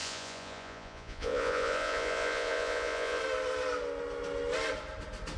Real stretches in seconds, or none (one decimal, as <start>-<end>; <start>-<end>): 3.2-5.4